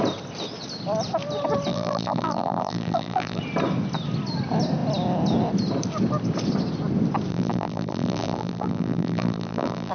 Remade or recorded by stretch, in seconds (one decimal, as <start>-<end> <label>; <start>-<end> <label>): 0.0-1.7 recorded; 1.7-3.4 remade; 3.4-7.3 recorded; 7.3-9.9 remade